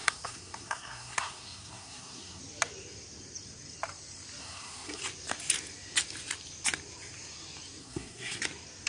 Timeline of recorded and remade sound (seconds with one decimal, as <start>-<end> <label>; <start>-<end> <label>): 0.0-2.4 remade; 2.4-4.4 recorded; 4.4-5.0 remade; 5.0-7.8 recorded; 7.8-8.4 remade; 8.4-8.9 recorded